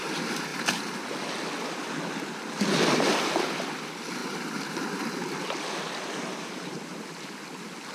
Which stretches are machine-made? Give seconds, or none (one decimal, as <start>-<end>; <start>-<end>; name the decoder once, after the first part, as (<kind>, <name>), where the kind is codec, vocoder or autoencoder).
none